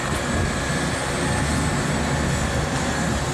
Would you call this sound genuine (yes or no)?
yes